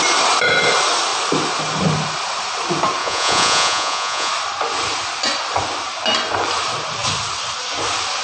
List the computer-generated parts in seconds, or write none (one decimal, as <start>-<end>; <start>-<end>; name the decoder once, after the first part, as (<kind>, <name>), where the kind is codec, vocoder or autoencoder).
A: 3.0-4.3 (vocoder, Vocos)